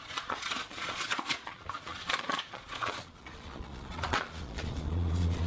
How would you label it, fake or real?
fake